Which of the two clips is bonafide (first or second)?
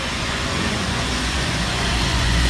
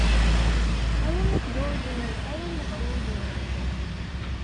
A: second